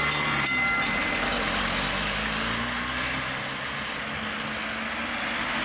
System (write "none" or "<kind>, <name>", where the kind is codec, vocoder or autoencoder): none